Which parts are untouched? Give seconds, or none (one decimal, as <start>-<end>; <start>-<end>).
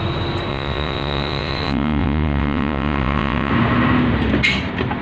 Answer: 0.0-0.5; 3.5-5.0